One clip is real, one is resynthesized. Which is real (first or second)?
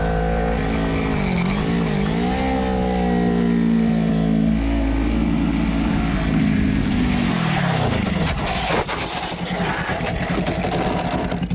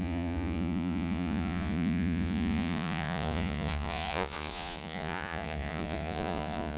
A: first